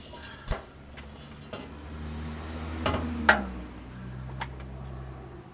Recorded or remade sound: recorded